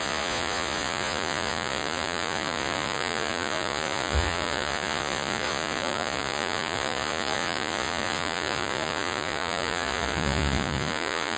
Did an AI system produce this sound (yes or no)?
yes